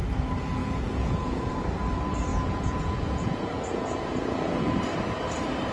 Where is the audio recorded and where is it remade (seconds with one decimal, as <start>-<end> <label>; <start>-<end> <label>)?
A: 0.0-0.6 recorded; 0.6-1.5 remade; 1.5-2.3 recorded; 2.3-4.8 remade; 4.8-5.7 recorded